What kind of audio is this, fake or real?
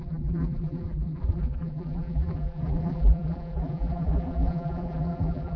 fake